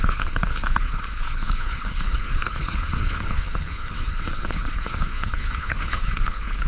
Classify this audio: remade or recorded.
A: remade